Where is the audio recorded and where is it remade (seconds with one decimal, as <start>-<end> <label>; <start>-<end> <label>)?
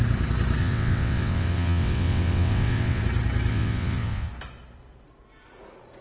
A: 0.0-0.6 recorded; 0.6-3.0 remade; 3.0-3.5 recorded; 3.5-4.3 remade; 4.3-6.0 recorded